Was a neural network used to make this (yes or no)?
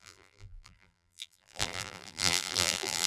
yes